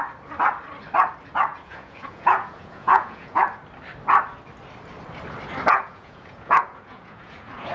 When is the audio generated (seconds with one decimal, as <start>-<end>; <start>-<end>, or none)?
1.5-3.4; 5.7-7.7